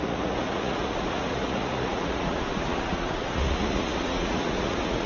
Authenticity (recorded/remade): remade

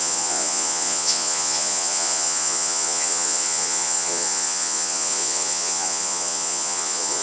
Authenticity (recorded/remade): remade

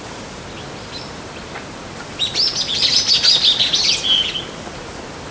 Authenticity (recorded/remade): recorded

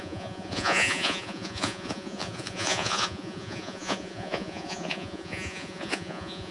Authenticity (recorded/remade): remade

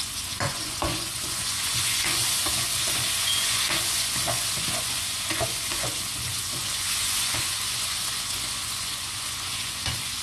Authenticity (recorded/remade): remade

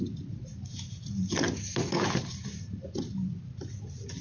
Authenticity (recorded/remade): recorded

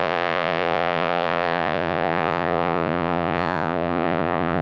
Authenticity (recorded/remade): remade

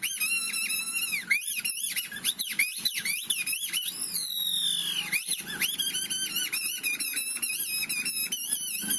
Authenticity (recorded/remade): recorded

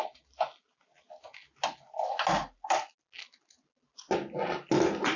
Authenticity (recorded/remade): recorded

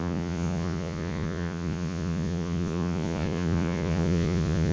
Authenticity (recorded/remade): remade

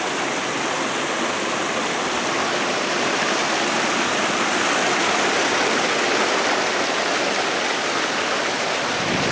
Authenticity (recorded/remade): recorded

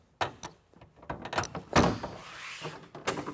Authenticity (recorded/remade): recorded